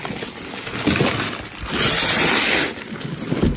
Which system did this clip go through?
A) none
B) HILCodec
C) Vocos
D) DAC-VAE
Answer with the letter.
A